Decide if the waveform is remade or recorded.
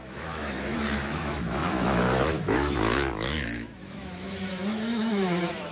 remade